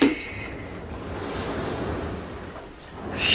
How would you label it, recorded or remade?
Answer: recorded